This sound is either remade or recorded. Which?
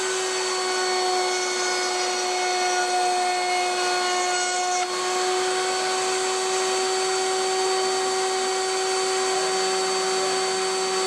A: recorded